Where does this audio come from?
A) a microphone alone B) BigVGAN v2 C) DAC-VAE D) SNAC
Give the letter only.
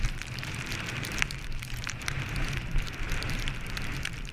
B